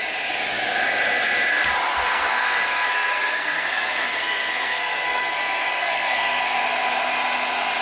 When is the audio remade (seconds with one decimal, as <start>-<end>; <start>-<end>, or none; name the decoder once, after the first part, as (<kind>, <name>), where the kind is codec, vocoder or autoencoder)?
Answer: 1.9-6.6 (codec, SNAC)